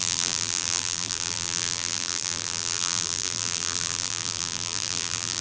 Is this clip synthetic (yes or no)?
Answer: yes